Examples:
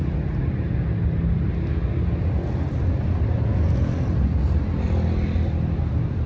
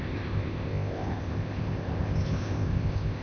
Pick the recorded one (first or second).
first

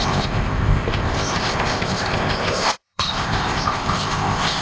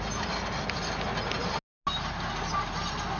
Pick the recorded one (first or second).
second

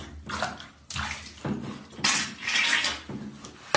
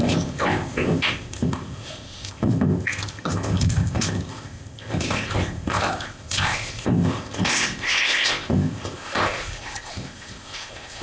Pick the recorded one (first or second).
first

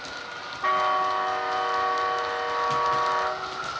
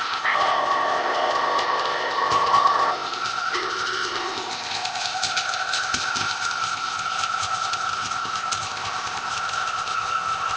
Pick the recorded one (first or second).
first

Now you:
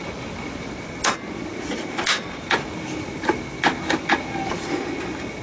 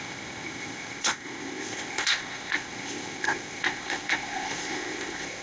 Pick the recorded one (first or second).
first